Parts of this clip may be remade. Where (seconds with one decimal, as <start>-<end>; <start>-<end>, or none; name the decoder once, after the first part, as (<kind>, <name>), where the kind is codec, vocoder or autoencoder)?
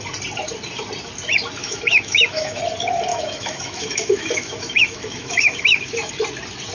1.6-2.6 (autoencoder, DAC-VAE); 3.1-6.1